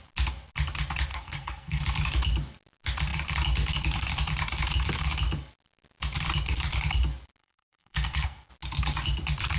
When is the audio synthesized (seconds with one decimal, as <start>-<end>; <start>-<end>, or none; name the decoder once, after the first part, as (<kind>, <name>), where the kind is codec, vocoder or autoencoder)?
1.1-1.8 (codec, SNAC); 7.4-8.5